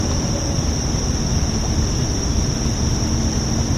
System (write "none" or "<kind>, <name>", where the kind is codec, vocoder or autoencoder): none